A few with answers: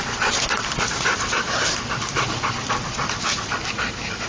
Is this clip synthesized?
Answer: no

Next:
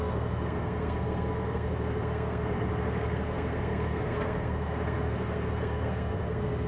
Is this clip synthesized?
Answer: yes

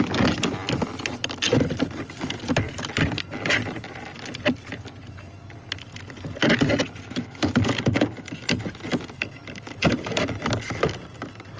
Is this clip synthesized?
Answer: no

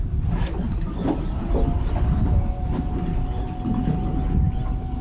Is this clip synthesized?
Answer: no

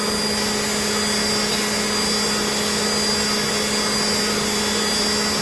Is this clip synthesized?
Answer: no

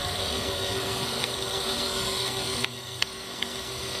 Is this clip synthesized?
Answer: yes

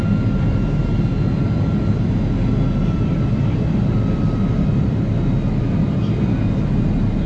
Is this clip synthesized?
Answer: no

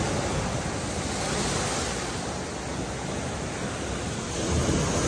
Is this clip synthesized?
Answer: no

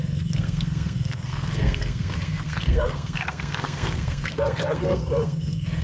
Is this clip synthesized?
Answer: yes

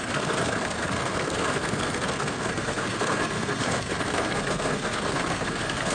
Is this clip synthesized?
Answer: yes